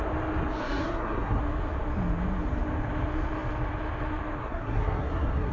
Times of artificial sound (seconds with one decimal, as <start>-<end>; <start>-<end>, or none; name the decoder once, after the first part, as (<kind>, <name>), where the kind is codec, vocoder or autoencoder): 0.6-1.4 (codec, SNAC); 4.4-5.5